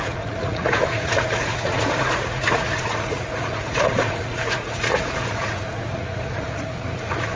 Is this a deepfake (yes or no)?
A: yes